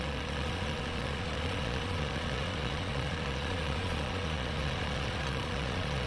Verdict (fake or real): fake